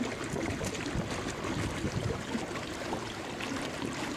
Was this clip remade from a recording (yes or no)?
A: no